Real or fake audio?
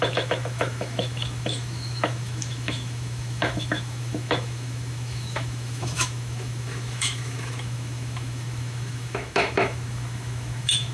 fake